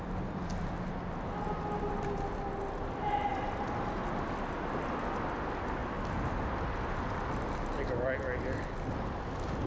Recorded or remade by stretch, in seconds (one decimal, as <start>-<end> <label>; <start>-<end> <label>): 0.0-9.7 recorded